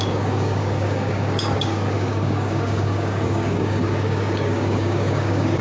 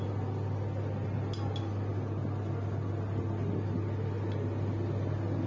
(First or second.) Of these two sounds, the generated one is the first